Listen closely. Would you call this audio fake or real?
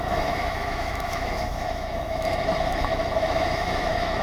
fake